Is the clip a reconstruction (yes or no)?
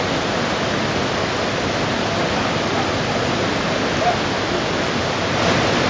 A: no